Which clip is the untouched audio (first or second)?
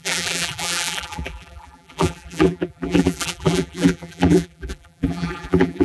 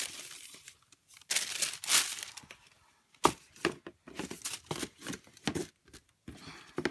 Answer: second